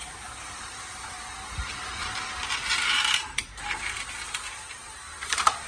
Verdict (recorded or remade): remade